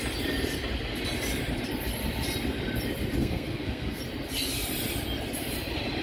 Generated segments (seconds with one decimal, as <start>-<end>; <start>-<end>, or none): 3.2-4.0